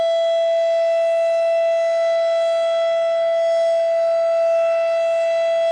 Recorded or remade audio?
recorded